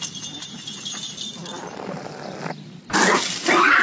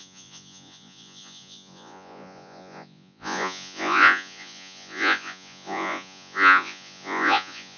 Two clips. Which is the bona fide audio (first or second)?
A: first